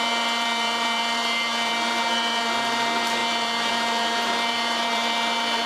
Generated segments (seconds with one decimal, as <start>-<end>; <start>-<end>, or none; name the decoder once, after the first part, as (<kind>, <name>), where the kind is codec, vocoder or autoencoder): 0.0-5.7 (vocoder, BigVGAN v2)